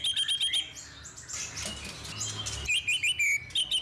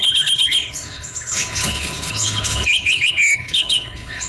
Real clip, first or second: first